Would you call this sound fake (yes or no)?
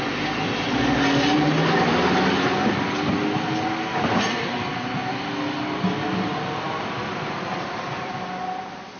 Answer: no